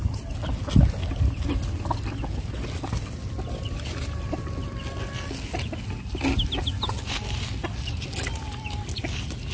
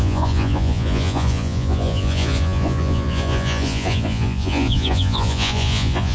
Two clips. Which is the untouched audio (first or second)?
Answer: first